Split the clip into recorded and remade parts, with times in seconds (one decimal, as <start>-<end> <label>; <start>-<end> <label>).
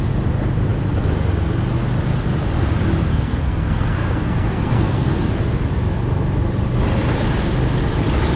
0.0-3.1 recorded; 3.1-5.3 remade; 5.3-8.4 recorded